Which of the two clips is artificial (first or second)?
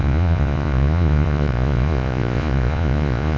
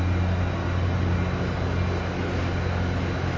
first